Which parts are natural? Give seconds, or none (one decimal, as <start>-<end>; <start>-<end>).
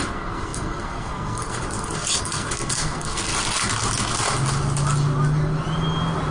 3.3-6.3